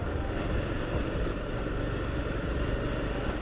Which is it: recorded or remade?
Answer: recorded